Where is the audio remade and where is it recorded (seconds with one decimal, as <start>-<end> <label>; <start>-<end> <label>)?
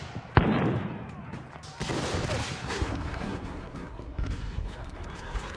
0.0-2.6 recorded; 2.6-5.6 remade